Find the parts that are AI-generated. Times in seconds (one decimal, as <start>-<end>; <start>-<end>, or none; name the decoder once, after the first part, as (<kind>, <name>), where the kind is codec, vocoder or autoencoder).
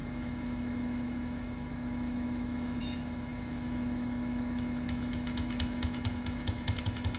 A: 0.0-7.2 (autoencoder, DAC-VAE)